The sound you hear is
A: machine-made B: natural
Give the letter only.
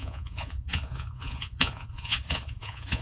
A